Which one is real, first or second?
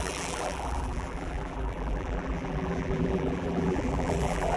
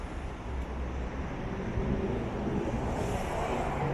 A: second